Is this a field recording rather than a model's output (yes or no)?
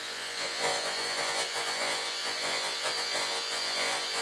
no